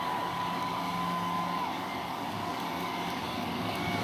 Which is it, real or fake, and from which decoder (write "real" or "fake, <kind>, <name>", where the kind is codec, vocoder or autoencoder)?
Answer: fake, codec, DAC